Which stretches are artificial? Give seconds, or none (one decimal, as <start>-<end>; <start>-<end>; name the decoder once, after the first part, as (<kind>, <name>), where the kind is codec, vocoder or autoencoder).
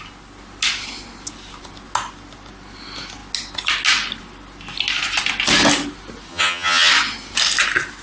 6.3-6.9 (vocoder, HiFi-GAN)